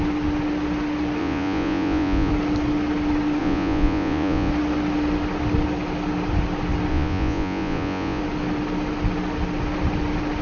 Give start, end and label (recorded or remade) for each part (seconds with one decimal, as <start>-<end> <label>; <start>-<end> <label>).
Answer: 0.0-1.2 recorded; 1.2-2.3 remade; 2.3-3.4 recorded; 3.4-4.5 remade; 4.5-6.9 recorded; 6.9-8.2 remade; 8.2-10.4 recorded